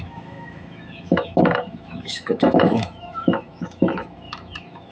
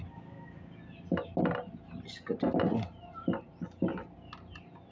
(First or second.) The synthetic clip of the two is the first